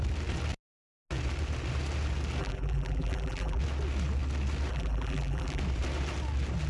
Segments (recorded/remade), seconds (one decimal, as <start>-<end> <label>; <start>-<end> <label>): 0.0-2.4 recorded; 2.4-3.6 remade; 3.6-4.7 recorded; 4.7-5.6 remade; 5.6-6.7 recorded